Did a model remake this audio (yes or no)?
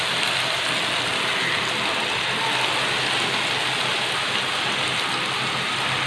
no